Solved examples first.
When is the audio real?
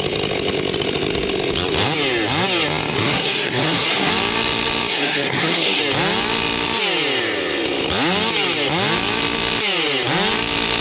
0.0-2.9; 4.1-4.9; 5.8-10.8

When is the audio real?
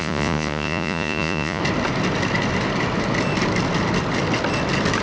1.6-5.0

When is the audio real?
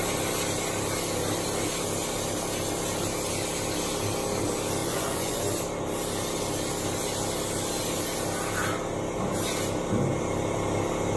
0.0-4.8; 5.4-11.2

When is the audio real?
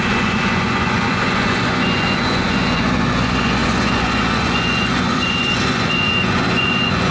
none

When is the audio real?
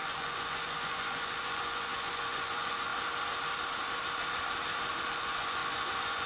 2.9-5.1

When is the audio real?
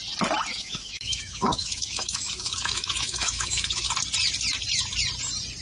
0.0-0.5; 3.9-5.6